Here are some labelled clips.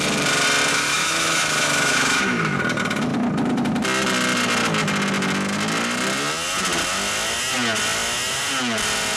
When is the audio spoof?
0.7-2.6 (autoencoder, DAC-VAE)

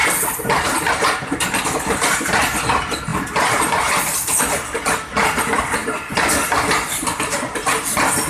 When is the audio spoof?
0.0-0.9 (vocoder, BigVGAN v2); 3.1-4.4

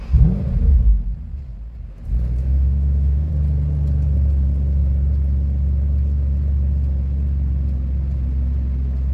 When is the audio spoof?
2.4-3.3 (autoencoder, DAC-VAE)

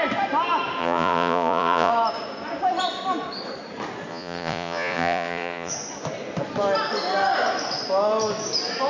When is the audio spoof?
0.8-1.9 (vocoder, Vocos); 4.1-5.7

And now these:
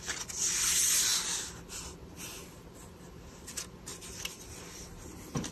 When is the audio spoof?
none

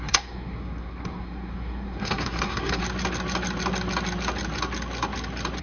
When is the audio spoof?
0.0-2.8 (codec, SNAC)